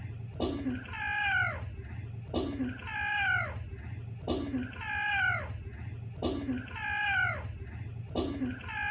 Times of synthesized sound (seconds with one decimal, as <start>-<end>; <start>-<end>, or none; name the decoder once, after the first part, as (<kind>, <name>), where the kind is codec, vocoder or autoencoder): none